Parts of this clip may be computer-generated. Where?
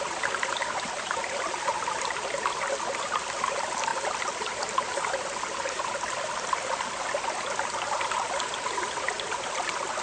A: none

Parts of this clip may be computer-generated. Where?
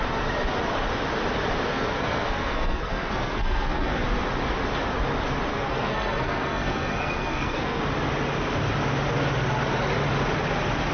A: 1.7-4.0 (codec, SNAC); 5.5-7.8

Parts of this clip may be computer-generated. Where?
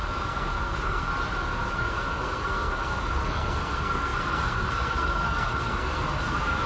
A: 0.0-1.1 (codec, SNAC); 1.7-6.7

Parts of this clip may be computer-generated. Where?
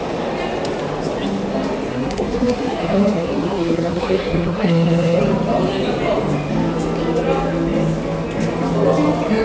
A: 1.9-5.2 (codec, SNAC)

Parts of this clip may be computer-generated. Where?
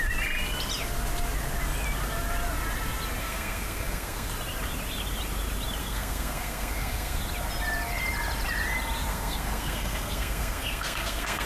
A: 3.2-4.3 (codec, SNAC); 5.8-7.2; 9.1-11.5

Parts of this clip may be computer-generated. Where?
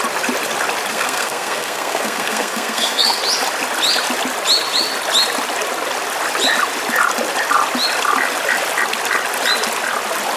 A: 0.9-3.2 (codec, SNAC)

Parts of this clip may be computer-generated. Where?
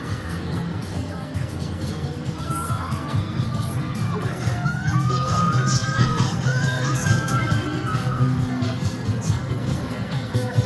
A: 0.0-10.7 (codec, SNAC)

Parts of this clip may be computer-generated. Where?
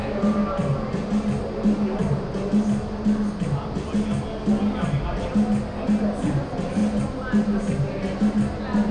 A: none